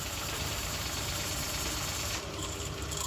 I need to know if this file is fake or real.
fake